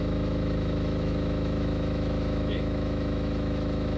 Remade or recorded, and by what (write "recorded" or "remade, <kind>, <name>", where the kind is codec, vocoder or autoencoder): remade, autoencoder, DAC-VAE